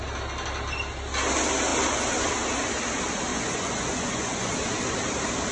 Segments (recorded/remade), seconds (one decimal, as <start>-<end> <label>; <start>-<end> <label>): 0.0-3.3 recorded; 3.3-4.5 remade; 4.5-5.5 recorded